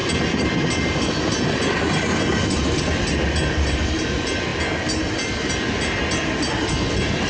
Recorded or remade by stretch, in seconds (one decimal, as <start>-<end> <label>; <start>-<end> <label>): 0.0-7.3 recorded